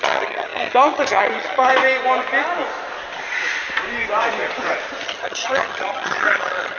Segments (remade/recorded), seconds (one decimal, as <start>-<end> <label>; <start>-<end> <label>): 0.0-1.7 remade; 1.7-5.0 recorded; 5.0-6.8 remade